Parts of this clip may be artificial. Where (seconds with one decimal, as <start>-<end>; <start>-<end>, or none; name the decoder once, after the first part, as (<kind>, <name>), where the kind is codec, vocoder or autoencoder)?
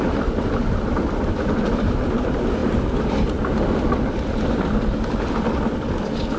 none